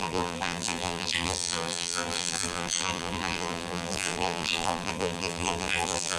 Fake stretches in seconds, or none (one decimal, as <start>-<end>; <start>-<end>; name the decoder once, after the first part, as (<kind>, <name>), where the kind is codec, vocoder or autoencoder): 0.0-6.2 (vocoder, BigVGAN v2)